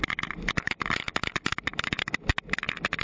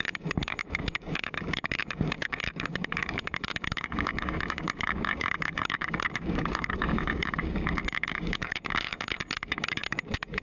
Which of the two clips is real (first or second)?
first